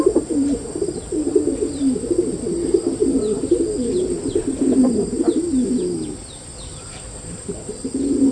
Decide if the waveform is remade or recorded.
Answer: recorded